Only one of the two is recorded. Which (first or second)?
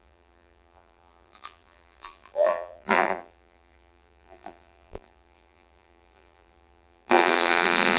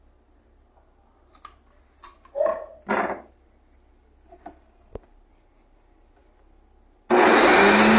second